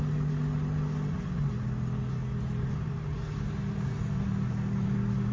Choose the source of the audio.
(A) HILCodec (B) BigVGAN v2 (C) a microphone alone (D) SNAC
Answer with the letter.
C